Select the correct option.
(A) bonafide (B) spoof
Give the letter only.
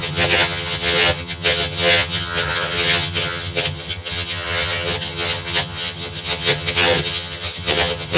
B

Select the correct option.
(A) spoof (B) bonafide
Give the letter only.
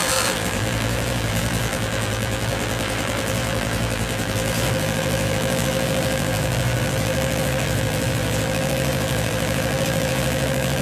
A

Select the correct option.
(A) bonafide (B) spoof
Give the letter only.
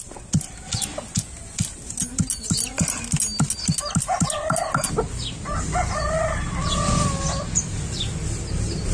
A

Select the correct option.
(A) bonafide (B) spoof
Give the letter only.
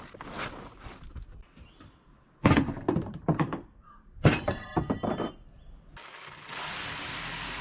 B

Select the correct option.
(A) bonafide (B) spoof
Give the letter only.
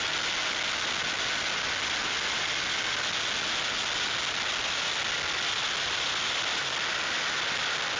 A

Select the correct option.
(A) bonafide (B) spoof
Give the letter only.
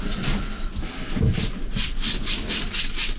A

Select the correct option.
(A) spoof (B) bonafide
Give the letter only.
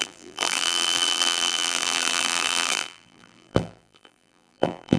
A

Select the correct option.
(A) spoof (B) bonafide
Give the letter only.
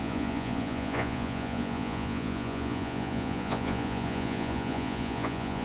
A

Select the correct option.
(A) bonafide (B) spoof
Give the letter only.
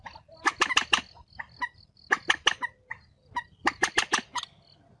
A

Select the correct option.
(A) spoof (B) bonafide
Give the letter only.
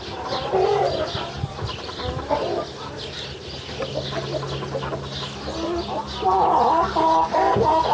B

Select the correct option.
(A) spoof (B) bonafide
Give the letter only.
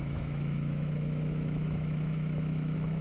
A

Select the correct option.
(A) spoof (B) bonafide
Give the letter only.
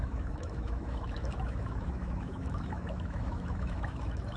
A